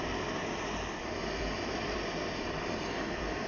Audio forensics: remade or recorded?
remade